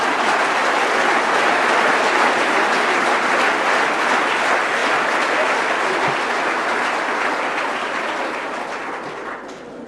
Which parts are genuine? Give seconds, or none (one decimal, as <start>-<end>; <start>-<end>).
0.0-9.9